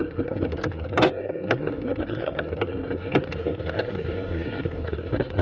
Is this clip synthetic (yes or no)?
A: yes